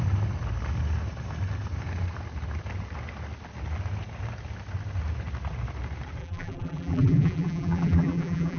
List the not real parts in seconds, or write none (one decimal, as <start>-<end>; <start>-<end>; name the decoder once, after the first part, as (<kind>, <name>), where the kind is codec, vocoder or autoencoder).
6.2-8.6 (vocoder, BigVGAN v2)